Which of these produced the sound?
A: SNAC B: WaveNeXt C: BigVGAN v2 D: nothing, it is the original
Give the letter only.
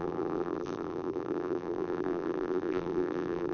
C